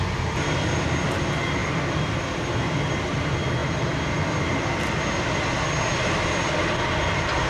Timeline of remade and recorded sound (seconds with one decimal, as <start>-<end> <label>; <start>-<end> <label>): 0.0-1.6 recorded; 1.6-2.9 remade; 2.9-3.6 recorded; 3.6-4.8 remade; 4.8-7.5 recorded

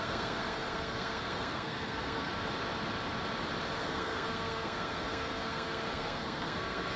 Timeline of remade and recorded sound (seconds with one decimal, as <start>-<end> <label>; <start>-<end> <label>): 0.0-2.3 remade; 2.3-3.8 recorded; 3.8-7.0 remade

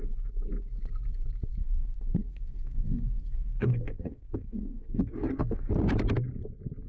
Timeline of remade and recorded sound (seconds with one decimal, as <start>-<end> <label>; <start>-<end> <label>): 0.0-1.6 recorded; 1.6-5.7 remade; 5.7-6.9 recorded

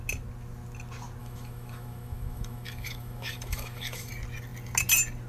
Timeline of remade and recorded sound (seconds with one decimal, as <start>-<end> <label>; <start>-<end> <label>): 0.0-1.2 recorded; 1.2-4.1 remade; 4.1-5.3 recorded

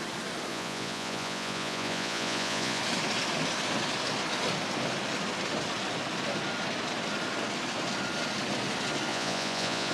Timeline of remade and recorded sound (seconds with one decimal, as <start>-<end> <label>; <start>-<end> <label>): 0.0-0.5 recorded; 0.5-2.8 remade; 2.8-9.1 recorded; 9.1-9.9 remade

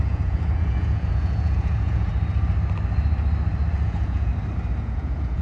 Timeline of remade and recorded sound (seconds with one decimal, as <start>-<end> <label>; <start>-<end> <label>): 0.0-2.1 remade; 2.1-3.7 recorded; 3.7-4.3 remade; 4.3-4.8 recorded; 4.8-5.4 remade